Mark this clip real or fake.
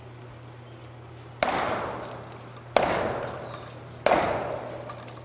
real